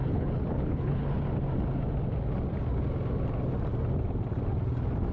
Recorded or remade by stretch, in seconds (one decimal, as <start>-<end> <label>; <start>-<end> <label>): 0.0-1.1 remade; 1.1-5.1 recorded